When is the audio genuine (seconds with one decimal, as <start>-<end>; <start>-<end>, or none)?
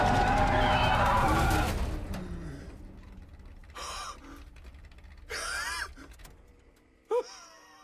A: 0.0-7.8